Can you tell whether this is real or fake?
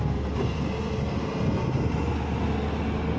real